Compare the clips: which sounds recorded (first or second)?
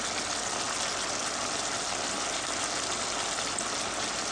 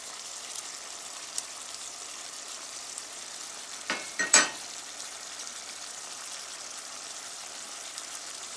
first